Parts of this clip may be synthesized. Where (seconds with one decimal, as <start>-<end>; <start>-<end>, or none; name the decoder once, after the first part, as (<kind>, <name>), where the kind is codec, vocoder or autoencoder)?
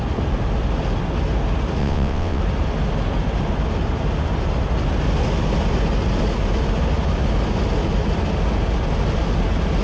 1.8-2.4 (vocoder, WaveNeXt)